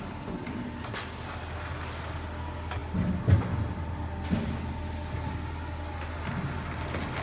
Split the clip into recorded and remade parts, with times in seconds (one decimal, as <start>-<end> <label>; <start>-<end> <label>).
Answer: 0.0-7.2 recorded